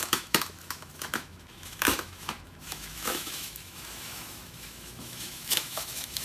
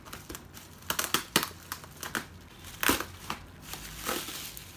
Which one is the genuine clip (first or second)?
second